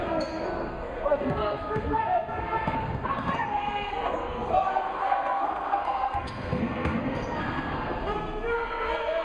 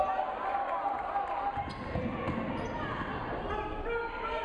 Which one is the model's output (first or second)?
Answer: first